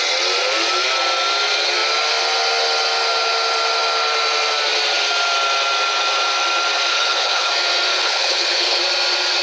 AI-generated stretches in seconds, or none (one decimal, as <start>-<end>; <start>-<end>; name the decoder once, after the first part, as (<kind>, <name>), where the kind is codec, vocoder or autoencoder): 6.9-7.5 (codec, HILCodec); 7.9-8.8